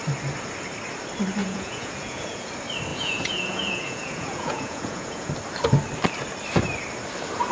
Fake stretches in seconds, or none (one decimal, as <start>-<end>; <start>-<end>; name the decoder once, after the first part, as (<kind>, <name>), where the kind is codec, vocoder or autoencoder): 1.4-2.5 (vocoder, Vocos); 2.9-5.3